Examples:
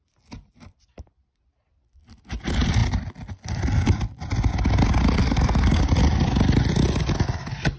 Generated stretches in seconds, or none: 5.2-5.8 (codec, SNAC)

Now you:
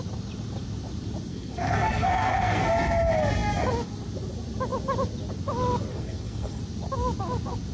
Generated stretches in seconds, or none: 1.3-2.7 (codec, SNAC); 5.9-6.6

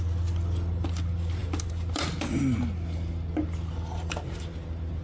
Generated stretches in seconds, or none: none

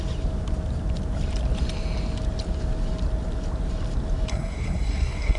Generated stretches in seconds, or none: 4.3-5.4 (codec, SNAC)

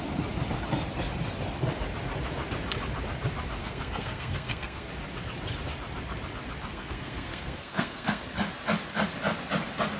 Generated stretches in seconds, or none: 3.6-4.9 (codec, SNAC); 6.7-8.2

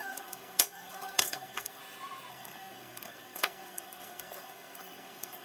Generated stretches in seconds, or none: 0.0-1.8 (codec, SNAC); 2.3-5.4

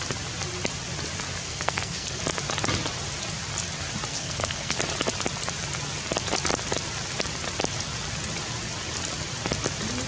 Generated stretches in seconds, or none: 1.4-2.2 (codec, SNAC); 4.1-4.8

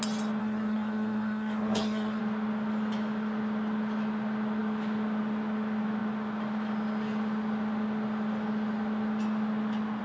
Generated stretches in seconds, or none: 0.4-2.2 (codec, SNAC)